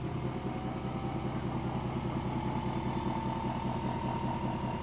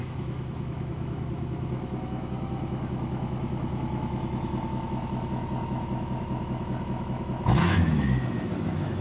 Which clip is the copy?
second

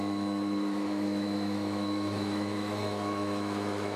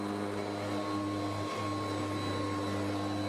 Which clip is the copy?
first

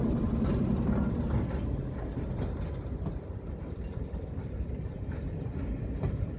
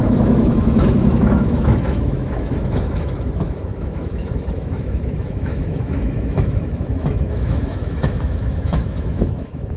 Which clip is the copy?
second